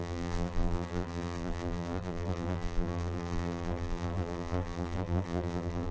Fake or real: fake